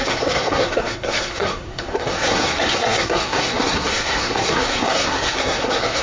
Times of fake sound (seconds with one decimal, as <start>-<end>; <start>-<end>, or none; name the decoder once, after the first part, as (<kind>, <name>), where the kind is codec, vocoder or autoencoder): 0.0-6.0 (codec, SNAC)